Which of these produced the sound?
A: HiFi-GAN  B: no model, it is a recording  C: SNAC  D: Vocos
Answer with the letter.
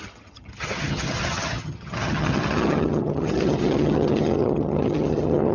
A